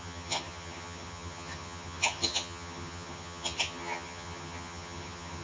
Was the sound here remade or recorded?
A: remade